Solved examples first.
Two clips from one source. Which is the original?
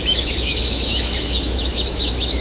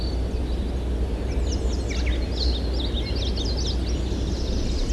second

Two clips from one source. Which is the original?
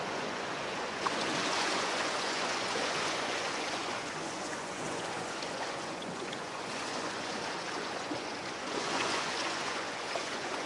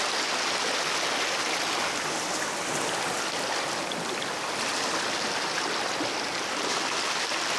second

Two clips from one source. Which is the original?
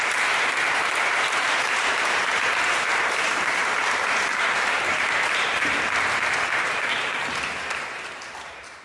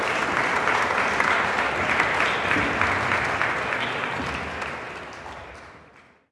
second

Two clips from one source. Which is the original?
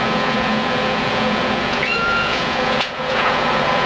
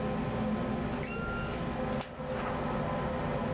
second